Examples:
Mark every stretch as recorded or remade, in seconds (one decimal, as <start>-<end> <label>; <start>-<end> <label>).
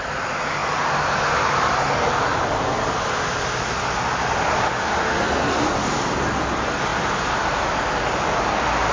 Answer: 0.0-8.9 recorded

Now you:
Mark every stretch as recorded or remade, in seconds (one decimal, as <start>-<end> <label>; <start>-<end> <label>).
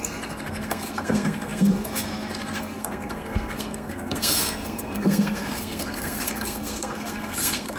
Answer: 0.0-7.8 remade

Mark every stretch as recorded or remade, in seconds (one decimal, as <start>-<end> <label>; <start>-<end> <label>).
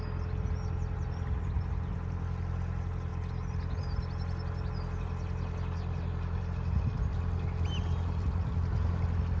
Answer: 0.0-9.4 recorded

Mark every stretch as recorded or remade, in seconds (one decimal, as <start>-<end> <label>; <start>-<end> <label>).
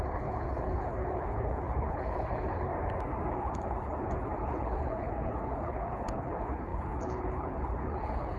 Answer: 0.0-2.7 remade; 2.7-3.3 recorded; 3.3-8.4 remade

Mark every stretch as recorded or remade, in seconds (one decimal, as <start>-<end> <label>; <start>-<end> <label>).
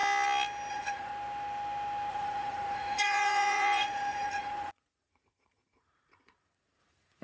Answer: 0.0-0.7 recorded; 0.7-1.1 remade; 1.1-2.1 recorded; 2.1-7.2 remade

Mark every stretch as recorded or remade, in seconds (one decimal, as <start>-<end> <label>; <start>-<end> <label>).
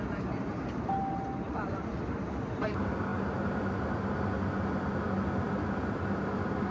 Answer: 0.0-6.7 recorded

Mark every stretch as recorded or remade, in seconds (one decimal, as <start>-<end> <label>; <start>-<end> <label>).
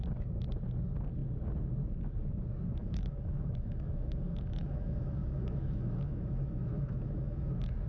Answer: 0.0-2.8 recorded; 2.8-7.5 remade; 7.5-7.9 recorded